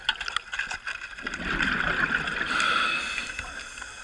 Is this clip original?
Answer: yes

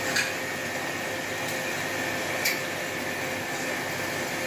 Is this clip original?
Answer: yes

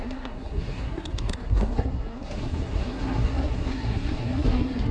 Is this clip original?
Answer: no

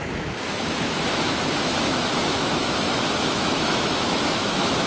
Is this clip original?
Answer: no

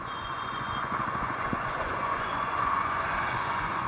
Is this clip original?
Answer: no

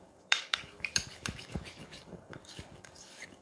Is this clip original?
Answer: no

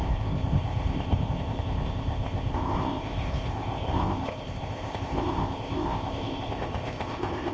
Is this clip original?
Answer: no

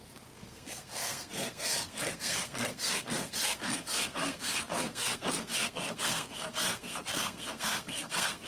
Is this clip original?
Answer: no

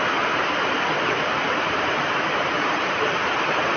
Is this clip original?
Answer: no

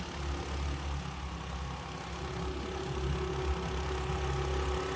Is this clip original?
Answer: yes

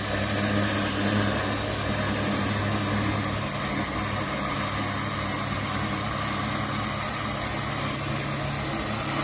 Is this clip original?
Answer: yes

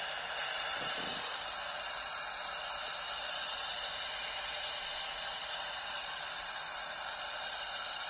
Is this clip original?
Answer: yes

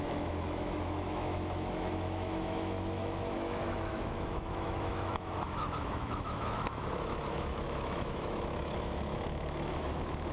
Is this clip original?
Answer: no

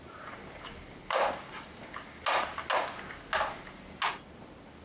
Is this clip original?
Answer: yes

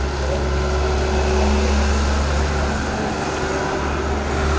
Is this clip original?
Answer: yes